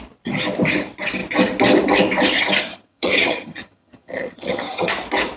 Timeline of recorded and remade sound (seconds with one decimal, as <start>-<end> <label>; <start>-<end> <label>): 0.0-2.7 recorded; 2.7-4.9 remade; 4.9-5.4 recorded